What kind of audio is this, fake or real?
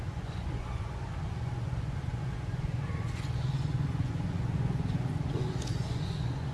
fake